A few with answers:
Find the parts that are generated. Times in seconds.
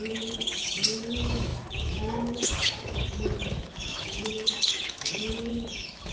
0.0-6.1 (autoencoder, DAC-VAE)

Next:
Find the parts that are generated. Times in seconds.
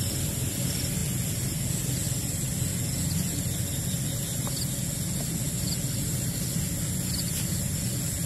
none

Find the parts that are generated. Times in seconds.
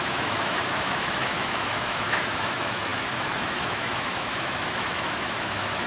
0.0-5.9 (autoencoder, DAC-VAE)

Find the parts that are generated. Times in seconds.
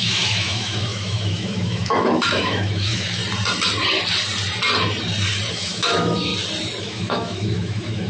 0.0-3.2 (autoencoder, DAC-VAE); 5.5-6.3; 6.8-8.1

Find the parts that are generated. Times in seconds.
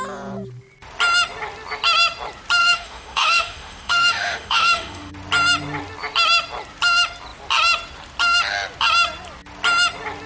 2.6-5.1 (autoencoder, DAC-VAE)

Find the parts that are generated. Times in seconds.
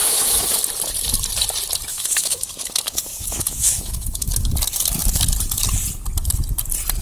0.0-0.6 (autoencoder, DAC-VAE); 1.9-4.3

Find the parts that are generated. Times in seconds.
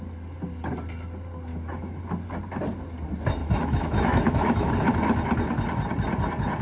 1.5-2.0 (autoencoder, DAC-VAE); 3.4-4.7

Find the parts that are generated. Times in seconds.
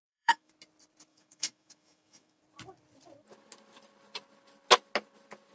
0.0-0.5 (autoencoder, DAC-VAE); 1.1-2.4